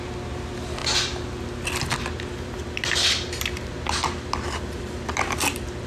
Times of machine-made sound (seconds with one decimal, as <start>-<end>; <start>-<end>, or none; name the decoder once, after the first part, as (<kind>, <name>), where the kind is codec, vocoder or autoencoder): none